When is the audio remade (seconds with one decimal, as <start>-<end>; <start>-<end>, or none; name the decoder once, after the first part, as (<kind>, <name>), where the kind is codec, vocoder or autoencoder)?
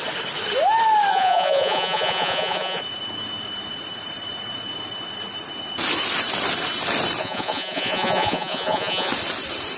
1.1-2.8 (vocoder, Vocos); 7.2-9.1